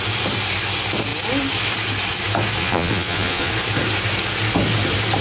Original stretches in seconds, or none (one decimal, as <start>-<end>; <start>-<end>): 0.0-2.6; 3.5-5.2